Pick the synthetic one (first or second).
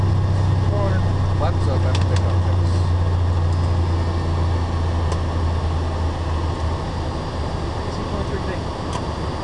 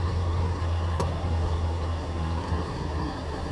second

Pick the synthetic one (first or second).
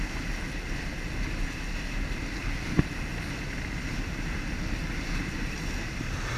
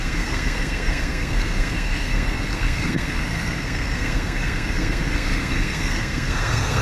second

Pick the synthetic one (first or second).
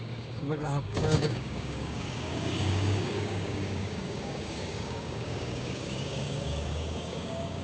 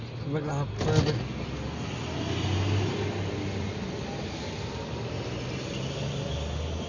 first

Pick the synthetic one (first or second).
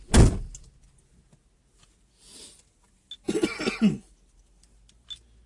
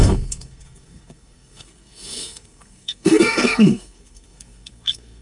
second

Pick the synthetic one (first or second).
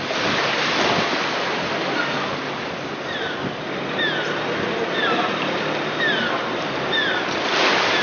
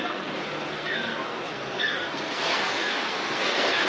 second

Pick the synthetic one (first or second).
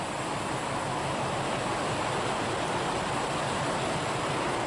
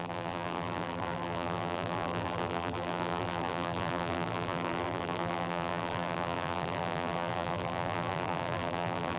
second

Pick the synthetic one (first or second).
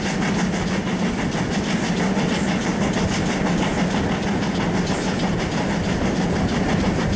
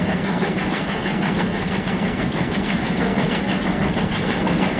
second